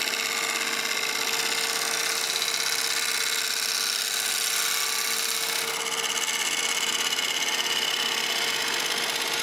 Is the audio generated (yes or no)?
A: no